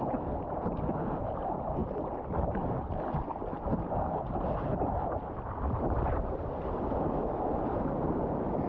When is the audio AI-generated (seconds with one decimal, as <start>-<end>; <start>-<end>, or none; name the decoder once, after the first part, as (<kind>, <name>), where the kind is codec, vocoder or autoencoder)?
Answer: 0.0-1.8 (vocoder, BigVGAN v2); 2.5-3.4; 4.2-8.7